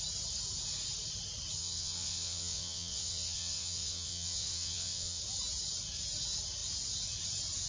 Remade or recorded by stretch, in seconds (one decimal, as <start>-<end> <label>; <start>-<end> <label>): 0.0-1.6 recorded; 1.6-5.2 remade; 5.2-7.7 recorded